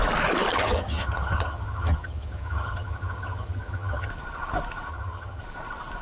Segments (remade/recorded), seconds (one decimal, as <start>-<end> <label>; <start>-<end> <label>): 0.0-0.5 recorded; 0.5-4.1 remade; 4.1-4.9 recorded; 4.9-5.4 remade; 5.4-6.0 recorded